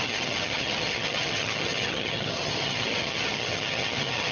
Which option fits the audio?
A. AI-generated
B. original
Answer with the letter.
A